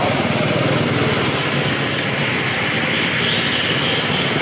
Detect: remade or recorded recorded